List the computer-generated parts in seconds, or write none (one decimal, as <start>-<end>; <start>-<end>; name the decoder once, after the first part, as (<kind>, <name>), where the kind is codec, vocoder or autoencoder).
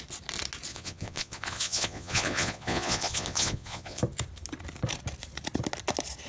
0.7-4.0 (vocoder, Vocos)